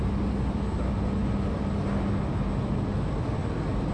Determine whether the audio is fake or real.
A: real